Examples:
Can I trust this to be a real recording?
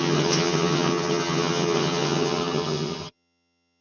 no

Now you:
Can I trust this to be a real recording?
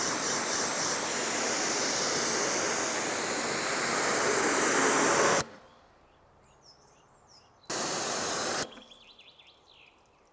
yes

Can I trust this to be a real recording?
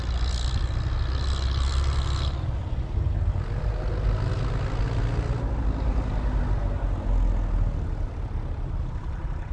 yes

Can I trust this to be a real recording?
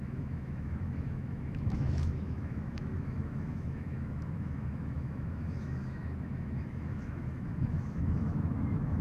no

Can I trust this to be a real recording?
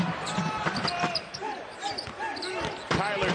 yes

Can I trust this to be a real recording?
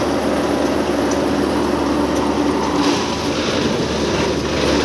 yes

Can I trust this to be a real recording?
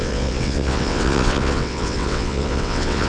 no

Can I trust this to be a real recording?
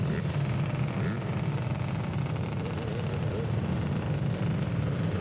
yes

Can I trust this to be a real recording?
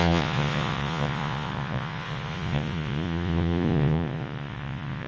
no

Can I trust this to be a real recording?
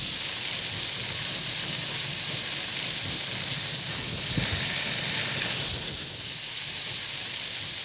yes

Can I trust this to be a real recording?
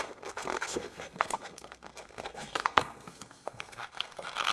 no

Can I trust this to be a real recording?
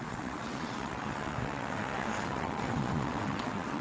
no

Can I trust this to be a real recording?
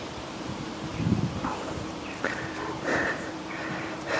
no